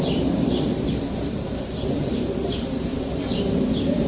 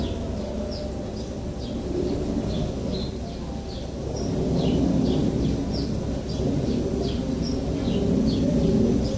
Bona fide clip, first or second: second